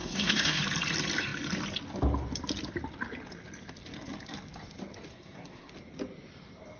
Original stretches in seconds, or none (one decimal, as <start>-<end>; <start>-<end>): 0.6-5.1; 5.7-6.8